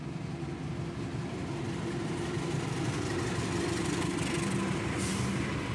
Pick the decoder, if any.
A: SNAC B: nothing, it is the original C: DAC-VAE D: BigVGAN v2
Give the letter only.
B